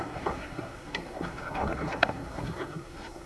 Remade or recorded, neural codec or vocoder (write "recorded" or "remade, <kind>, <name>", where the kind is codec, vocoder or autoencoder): remade, codec, SNAC